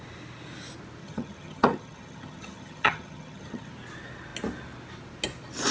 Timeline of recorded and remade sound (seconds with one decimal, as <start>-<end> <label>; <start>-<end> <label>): 0.0-1.0 recorded; 1.0-3.7 remade; 3.7-5.7 recorded